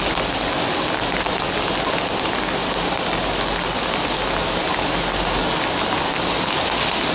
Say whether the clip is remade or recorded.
recorded